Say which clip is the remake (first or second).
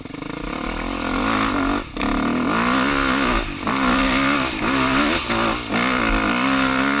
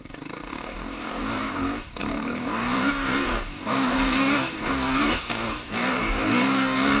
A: second